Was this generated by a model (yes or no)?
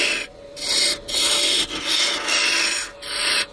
no